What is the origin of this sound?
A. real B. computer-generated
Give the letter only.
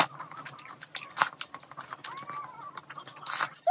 A